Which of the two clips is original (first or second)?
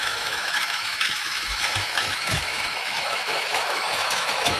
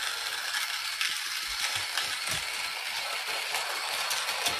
second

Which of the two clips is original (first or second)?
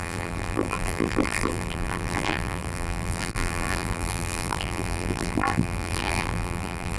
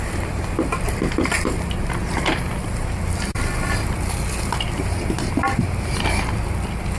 second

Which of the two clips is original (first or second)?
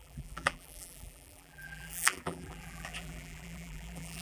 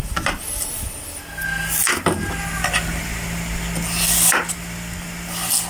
second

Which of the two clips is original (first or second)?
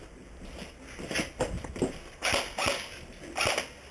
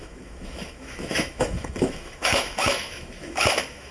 first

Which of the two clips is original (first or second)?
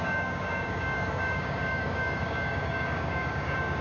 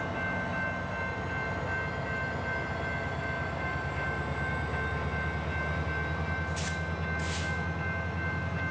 second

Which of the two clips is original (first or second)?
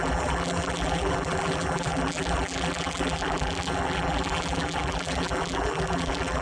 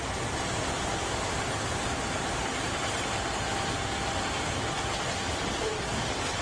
second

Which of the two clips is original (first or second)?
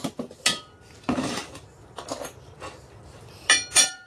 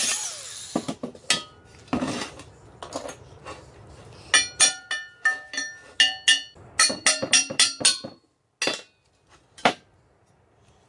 second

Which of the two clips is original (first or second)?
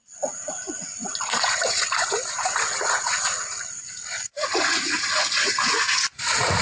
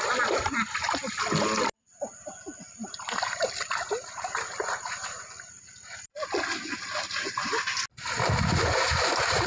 second